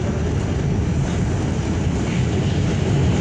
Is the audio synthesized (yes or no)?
no